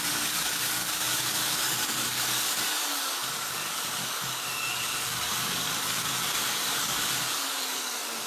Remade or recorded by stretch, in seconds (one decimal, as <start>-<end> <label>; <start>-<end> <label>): 0.0-8.3 remade